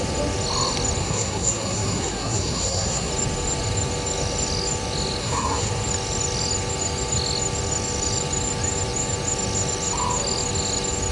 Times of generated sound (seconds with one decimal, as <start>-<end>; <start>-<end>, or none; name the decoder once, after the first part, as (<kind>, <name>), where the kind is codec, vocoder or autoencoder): 1.0-3.1 (codec, SNAC); 5.2-5.7